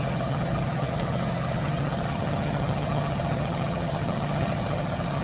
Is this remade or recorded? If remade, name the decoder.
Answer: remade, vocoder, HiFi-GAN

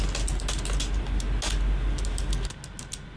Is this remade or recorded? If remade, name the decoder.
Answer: recorded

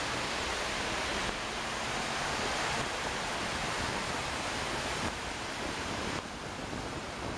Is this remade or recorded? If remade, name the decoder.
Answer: recorded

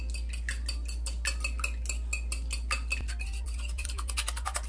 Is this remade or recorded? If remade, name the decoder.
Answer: recorded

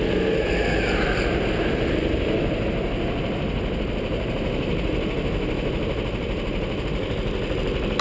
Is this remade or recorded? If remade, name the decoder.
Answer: recorded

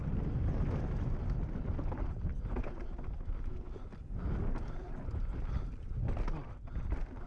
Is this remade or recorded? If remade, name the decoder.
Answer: recorded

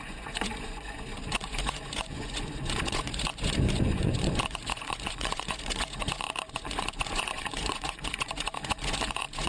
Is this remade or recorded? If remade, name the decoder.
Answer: remade, vocoder, Vocos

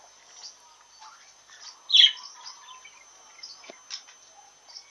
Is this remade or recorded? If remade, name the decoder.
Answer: recorded